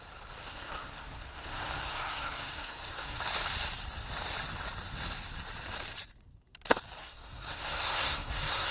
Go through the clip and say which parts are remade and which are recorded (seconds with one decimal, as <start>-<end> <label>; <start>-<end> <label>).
0.0-0.5 recorded; 0.5-3.2 remade; 3.2-7.0 recorded; 7.0-8.7 remade